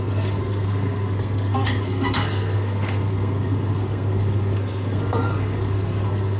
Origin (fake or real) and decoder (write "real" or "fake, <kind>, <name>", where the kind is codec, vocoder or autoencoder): fake, codec, SNAC